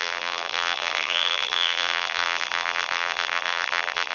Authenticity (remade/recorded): remade